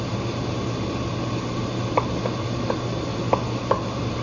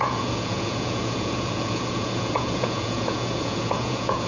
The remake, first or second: second